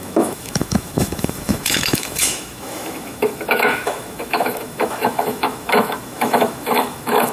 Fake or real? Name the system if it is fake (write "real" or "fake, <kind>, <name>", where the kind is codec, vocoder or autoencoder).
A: fake, autoencoder, DAC-VAE